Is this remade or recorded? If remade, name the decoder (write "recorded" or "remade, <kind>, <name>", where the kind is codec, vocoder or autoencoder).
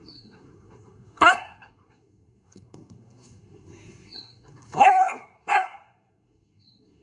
remade, codec, SNAC